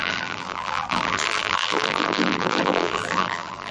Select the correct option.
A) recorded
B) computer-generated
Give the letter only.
B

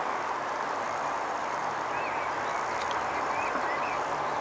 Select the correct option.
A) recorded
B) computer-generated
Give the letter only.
A